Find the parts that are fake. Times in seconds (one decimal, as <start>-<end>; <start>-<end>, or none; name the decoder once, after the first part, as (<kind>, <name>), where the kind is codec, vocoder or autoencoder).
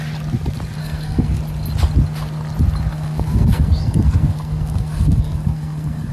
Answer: 0.8-1.4 (codec, SNAC); 2.9-6.1